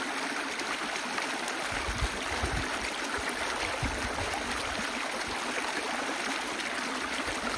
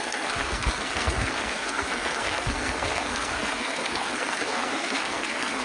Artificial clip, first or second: second